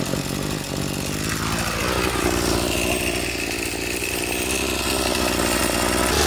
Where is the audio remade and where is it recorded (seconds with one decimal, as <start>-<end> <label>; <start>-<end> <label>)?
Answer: 0.0-1.8 recorded; 1.8-5.6 remade; 5.6-6.3 recorded